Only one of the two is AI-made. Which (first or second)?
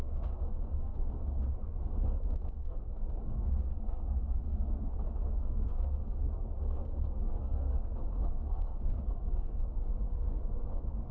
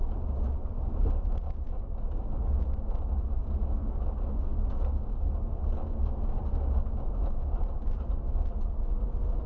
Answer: first